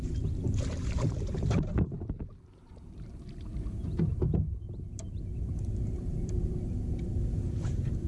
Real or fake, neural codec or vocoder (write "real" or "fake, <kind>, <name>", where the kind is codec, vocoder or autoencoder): fake, vocoder, BigVGAN v2